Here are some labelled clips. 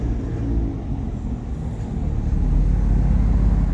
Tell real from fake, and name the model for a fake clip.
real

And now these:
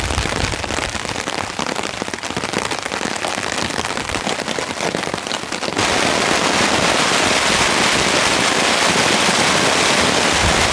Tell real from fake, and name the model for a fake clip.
real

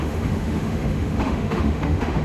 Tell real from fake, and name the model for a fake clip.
fake, autoencoder, DAC-VAE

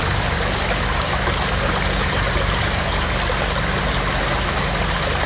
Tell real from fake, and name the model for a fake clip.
real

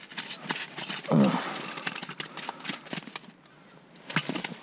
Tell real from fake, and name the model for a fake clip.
real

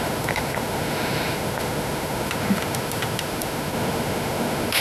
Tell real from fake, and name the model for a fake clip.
fake, autoencoder, DAC-VAE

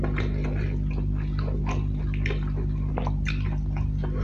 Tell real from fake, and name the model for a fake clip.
real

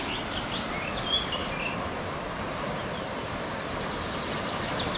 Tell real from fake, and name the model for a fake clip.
real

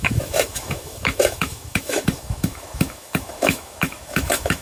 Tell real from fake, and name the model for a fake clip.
fake, autoencoder, DAC-VAE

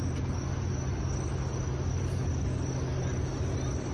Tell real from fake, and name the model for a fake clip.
real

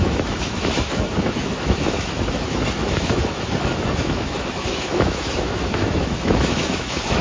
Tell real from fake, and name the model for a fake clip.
fake, autoencoder, DAC-VAE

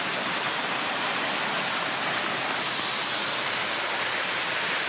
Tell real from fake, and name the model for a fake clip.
real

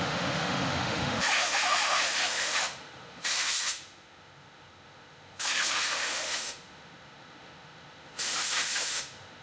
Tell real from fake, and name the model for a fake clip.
fake, autoencoder, DAC-VAE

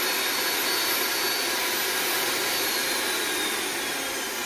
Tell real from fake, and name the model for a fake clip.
real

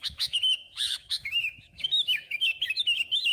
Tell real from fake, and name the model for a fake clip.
fake, autoencoder, DAC-VAE